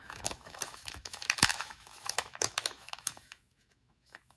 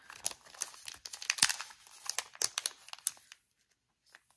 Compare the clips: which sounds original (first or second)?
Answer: second